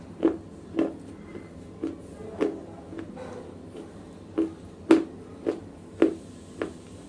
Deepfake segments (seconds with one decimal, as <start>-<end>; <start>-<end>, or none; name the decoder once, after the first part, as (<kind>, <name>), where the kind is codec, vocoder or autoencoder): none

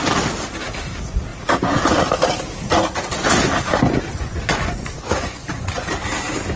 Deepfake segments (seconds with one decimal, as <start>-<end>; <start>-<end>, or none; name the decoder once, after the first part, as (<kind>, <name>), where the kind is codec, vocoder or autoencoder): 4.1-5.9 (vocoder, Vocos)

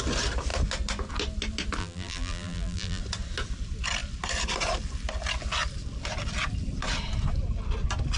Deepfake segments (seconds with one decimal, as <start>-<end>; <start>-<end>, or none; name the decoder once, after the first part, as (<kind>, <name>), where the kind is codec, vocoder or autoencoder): 1.8-3.0 (vocoder, BigVGAN v2)